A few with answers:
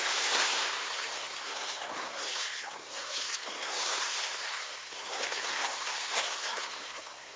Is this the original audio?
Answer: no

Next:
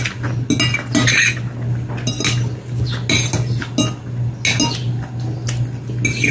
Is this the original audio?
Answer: yes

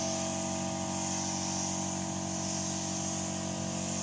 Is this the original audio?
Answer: yes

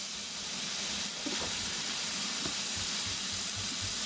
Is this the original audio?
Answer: no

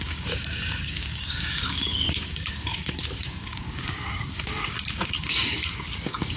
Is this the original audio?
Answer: no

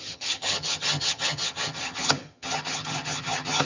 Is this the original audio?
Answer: no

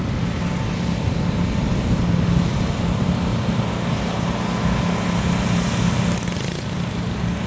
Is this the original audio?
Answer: yes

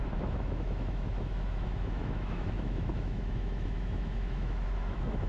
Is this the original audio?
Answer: no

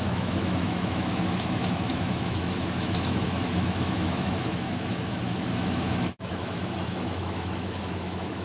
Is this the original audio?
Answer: no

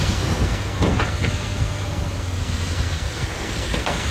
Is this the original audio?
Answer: no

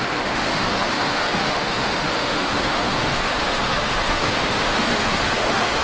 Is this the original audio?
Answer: no